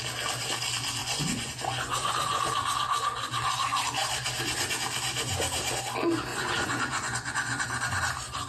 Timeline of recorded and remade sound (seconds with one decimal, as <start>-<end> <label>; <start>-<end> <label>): 0.0-1.0 recorded; 1.0-2.4 remade; 2.4-6.3 recorded; 6.3-8.0 remade; 8.0-8.5 recorded